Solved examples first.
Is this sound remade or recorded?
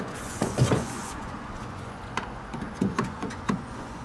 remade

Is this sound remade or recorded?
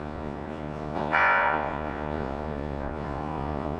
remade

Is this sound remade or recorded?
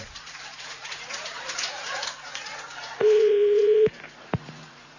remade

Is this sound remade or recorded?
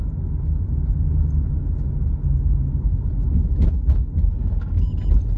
recorded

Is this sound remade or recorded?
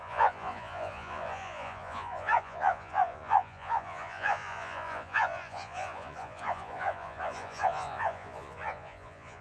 remade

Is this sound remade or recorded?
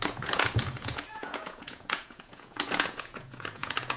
remade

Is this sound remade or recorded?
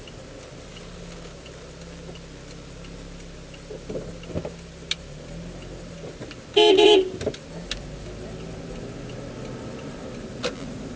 recorded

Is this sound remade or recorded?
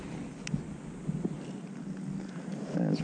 recorded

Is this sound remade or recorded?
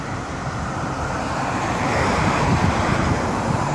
recorded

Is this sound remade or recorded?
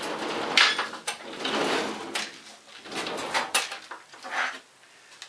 recorded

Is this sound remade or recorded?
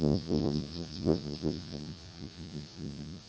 remade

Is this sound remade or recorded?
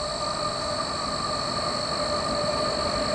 recorded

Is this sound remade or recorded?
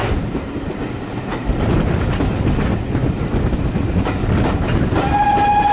recorded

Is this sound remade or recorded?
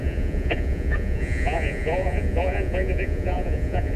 remade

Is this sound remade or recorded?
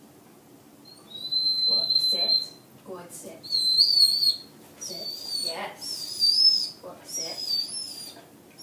recorded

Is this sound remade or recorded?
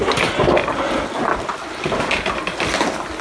recorded